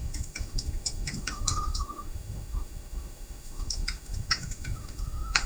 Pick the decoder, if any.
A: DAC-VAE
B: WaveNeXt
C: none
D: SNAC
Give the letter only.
A